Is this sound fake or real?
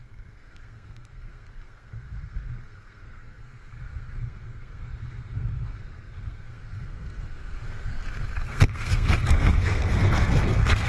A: fake